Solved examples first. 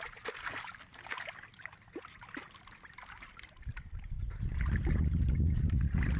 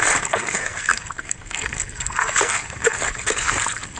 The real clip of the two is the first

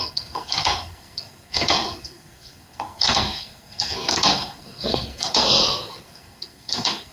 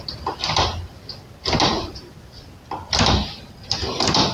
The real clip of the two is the second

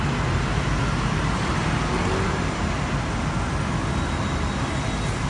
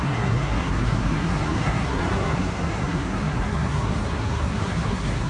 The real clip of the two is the first